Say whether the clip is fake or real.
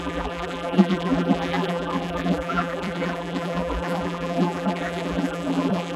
fake